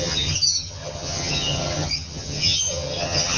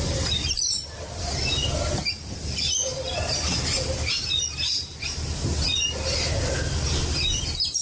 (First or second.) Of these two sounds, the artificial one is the first